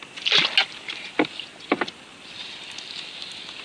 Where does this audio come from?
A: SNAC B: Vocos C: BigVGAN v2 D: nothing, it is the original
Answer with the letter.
D